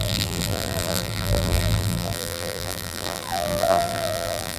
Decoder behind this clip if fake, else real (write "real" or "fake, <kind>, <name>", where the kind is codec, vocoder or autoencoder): fake, vocoder, BigVGAN v2